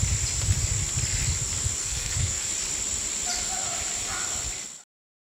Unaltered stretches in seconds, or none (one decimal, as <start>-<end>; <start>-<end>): 0.0-1.8; 2.5-5.2